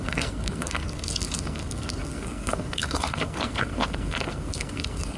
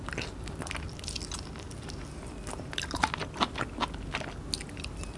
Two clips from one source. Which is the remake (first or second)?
first